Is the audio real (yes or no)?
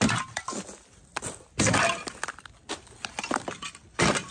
yes